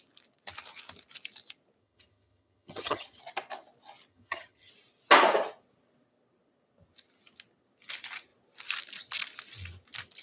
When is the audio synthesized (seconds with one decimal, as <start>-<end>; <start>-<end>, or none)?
1.8-3.2; 4.1-4.7